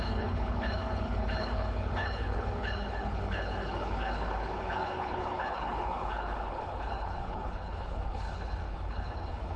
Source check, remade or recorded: remade